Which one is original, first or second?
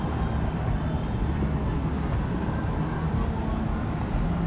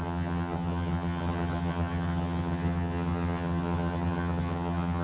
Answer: first